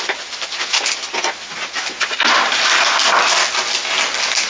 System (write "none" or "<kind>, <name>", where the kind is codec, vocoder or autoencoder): none